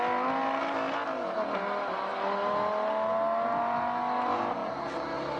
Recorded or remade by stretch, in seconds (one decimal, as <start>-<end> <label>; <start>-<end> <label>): 0.0-5.4 recorded